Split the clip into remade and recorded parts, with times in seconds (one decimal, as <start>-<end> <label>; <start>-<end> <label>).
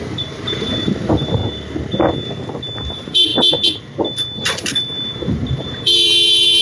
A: 0.0-1.4 remade; 1.4-2.9 recorded; 2.9-3.3 remade; 3.3-5.6 recorded; 5.6-6.6 remade